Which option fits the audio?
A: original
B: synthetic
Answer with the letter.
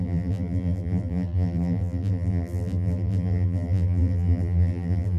B